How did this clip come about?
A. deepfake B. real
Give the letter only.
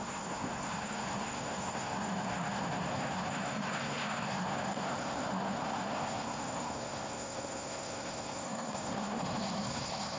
A